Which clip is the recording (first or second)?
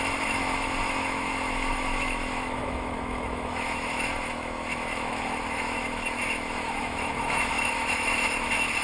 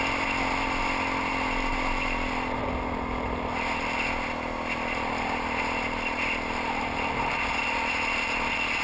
second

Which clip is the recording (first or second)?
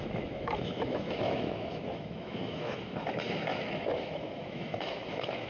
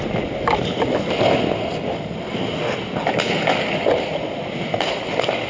second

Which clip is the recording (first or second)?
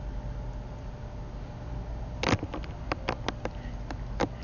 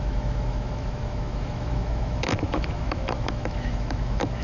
first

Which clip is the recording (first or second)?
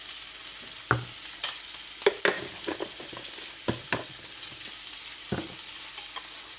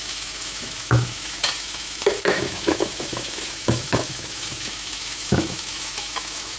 first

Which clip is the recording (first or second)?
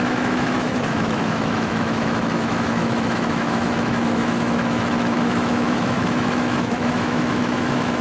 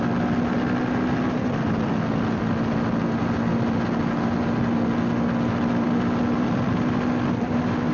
second